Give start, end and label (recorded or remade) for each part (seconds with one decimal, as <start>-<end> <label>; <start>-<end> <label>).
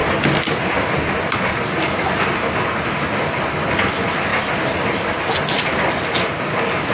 0.0-6.9 recorded